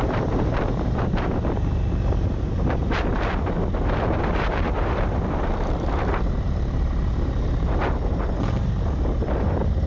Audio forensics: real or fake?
fake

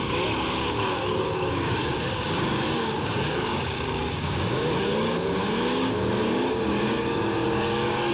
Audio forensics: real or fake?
fake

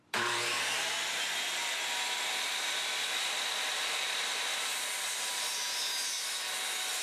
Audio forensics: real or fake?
fake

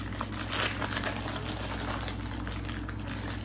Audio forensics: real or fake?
real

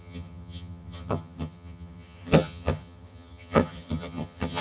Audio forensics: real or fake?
fake